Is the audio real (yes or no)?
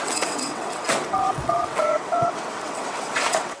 no